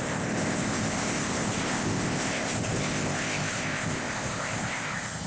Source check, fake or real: fake